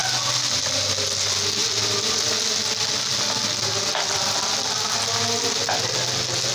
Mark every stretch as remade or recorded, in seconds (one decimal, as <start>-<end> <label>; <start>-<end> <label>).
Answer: 0.0-1.6 recorded; 1.6-2.3 remade; 2.3-6.5 recorded